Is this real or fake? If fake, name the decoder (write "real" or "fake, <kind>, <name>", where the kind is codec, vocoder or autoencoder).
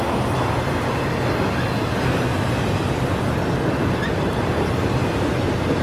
real